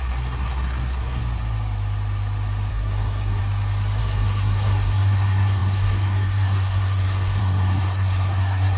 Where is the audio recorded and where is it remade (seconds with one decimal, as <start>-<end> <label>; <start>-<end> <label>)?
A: 0.0-1.2 remade; 1.2-2.7 recorded; 2.7-3.4 remade; 3.4-4.0 recorded; 4.0-8.8 remade